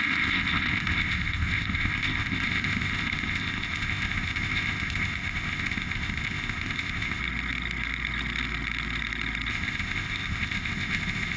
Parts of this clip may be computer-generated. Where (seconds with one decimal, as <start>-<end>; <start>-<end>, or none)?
0.0-7.2; 9.5-11.4